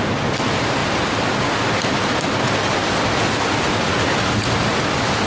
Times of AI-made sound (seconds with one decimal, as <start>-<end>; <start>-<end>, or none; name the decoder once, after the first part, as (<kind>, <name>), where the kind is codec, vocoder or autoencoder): none